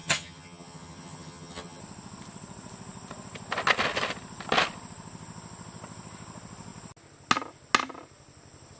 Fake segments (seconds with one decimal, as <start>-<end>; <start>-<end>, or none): 0.0-1.8